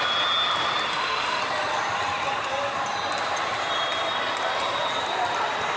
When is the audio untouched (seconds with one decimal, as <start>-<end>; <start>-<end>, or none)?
0.0-0.9; 1.4-5.8

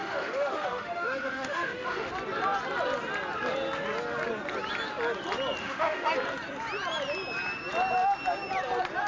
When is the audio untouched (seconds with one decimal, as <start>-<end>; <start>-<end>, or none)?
2.1-5.6; 6.1-9.1

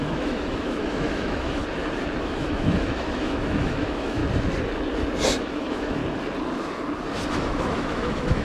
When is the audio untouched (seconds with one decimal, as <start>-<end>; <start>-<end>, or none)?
1.6-2.2; 4.2-5.4; 6.0-7.3

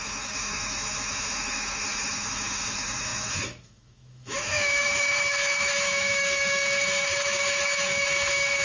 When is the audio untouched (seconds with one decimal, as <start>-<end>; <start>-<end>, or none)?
none

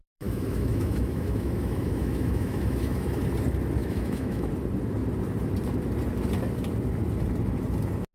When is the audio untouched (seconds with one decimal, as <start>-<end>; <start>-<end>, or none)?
3.2-3.8; 4.5-8.1

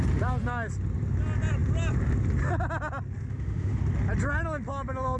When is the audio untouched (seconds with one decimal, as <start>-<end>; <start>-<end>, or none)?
0.0-3.3; 3.8-5.2

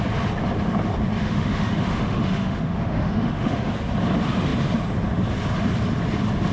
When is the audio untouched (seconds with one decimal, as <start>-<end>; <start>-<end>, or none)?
0.0-1.2; 3.7-6.5

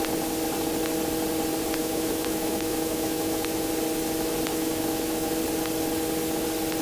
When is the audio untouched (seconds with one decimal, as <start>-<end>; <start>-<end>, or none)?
0.0-1.8; 3.7-4.5; 5.4-6.8